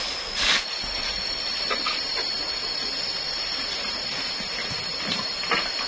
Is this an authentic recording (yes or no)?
yes